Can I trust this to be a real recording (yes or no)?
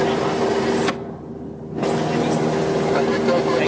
yes